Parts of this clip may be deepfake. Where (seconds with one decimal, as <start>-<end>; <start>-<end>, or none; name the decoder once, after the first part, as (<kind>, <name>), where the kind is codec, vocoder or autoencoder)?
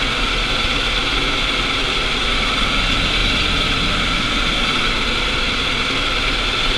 0.0-2.6 (vocoder, BigVGAN v2); 3.2-3.8; 4.7-6.1